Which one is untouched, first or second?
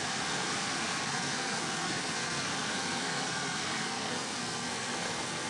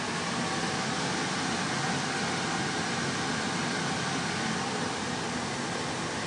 second